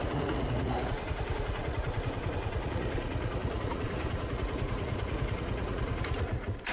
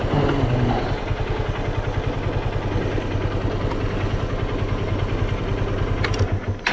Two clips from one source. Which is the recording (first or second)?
second